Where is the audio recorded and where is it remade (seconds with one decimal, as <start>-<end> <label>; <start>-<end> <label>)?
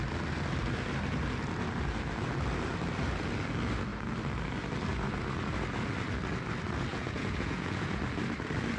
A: 0.0-6.9 recorded; 6.9-8.0 remade; 8.0-8.8 recorded